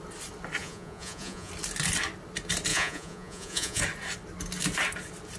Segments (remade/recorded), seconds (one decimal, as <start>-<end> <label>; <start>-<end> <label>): 0.0-0.6 recorded; 0.6-1.5 remade; 1.5-2.7 recorded; 2.7-3.8 remade; 3.8-5.4 recorded